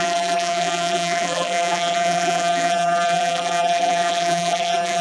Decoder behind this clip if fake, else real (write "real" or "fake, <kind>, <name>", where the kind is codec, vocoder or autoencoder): fake, vocoder, BigVGAN v2